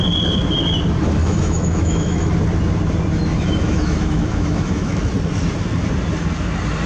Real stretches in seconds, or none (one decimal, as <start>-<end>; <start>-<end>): 0.0-1.2; 2.3-3.3; 5.1-6.9